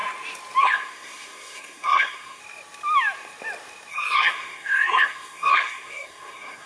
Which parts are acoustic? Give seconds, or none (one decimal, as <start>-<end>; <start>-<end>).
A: 0.0-0.6; 2.4-3.9